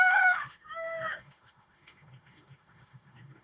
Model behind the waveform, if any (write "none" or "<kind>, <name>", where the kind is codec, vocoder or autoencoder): autoencoder, DAC-VAE